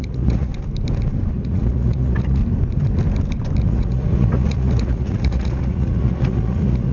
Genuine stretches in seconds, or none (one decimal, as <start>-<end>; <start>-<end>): 0.5-1.3; 2.4-3.6